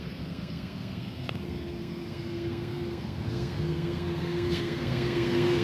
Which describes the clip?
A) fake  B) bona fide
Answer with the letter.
A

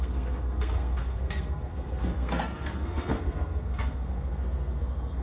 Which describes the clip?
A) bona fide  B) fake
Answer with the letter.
B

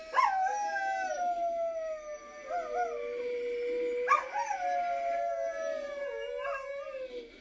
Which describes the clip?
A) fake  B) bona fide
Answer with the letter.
B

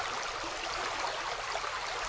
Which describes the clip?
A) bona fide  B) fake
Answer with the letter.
A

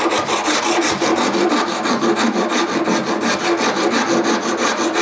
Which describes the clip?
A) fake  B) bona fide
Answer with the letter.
B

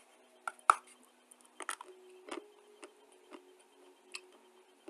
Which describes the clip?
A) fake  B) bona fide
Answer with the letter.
B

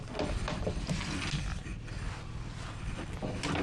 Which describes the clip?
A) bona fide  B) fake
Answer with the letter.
A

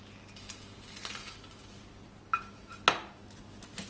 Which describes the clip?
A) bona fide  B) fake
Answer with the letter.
A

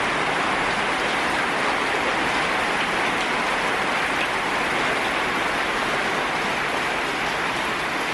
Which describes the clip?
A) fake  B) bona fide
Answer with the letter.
B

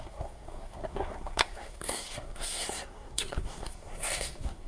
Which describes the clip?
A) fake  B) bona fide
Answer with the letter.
A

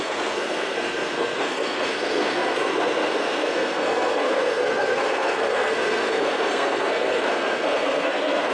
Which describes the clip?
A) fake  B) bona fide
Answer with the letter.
A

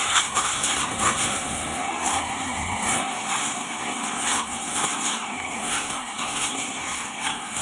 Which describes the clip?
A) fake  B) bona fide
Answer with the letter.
A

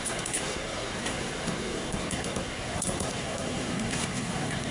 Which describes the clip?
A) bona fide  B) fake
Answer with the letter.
B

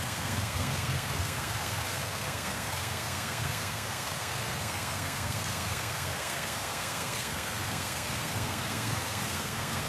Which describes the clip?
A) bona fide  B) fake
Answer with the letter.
B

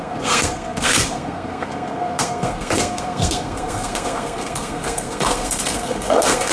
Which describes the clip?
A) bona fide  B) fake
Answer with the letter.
B